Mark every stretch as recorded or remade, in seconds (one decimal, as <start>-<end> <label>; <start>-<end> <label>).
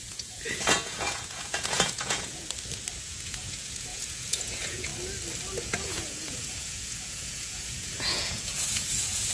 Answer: 0.0-2.4 remade; 2.4-3.0 recorded; 3.0-4.9 remade; 4.9-5.6 recorded; 5.6-9.3 remade